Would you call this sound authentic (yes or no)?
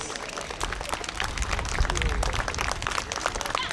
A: yes